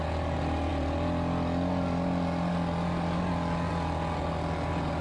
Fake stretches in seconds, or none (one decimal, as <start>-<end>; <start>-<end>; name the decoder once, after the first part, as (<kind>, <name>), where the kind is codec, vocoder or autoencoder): none